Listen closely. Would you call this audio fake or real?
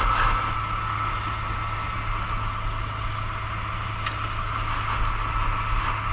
real